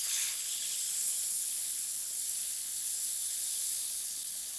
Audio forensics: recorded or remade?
remade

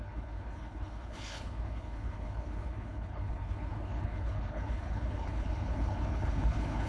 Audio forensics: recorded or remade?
remade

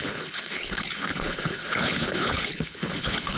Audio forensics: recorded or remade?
remade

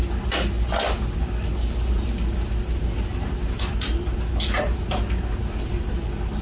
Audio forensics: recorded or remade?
recorded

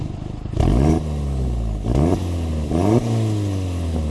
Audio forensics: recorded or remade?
recorded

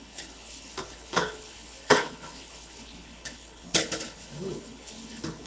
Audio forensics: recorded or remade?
remade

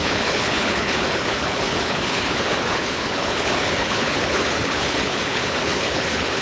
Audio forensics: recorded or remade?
remade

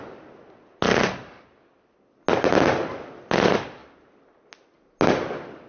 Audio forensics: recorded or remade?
recorded